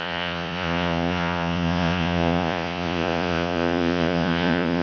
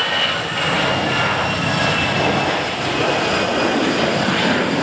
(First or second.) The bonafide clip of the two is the second